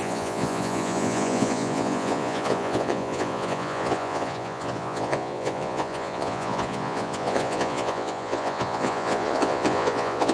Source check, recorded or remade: remade